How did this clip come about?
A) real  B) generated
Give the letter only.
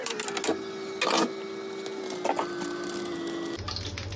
A